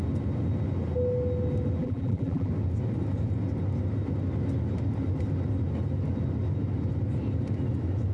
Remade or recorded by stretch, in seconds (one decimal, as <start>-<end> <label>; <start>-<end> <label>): 0.0-1.8 recorded; 1.8-2.5 remade; 2.5-8.1 recorded